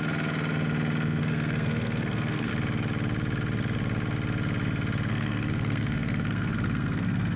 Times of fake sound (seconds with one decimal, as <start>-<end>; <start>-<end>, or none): 1.2-2.5; 5.1-7.4